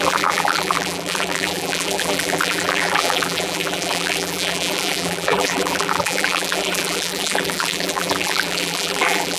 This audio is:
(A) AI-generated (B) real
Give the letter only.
A